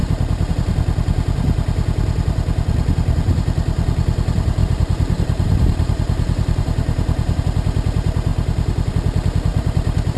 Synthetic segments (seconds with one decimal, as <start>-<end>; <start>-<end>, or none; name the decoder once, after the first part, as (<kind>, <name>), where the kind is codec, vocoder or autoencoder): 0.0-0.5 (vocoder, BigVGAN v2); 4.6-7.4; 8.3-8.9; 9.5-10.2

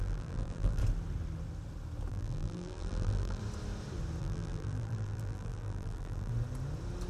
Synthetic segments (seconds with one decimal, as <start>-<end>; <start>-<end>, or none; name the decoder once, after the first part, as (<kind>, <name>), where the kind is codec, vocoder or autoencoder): 0.0-0.8 (vocoder, BigVGAN v2); 2.1-3.4; 4.2-6.3

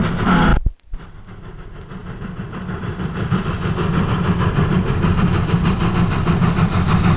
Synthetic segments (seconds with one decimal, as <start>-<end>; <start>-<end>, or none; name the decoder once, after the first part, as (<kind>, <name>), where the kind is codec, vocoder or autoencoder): 0.5-1.2 (vocoder, BigVGAN v2); 2.0-6.3

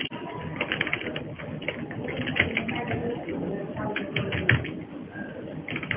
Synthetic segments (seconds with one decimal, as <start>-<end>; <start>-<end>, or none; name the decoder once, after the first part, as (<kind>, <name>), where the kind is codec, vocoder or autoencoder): 3.0-3.7 (vocoder, BigVGAN v2)